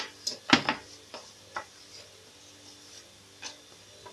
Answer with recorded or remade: recorded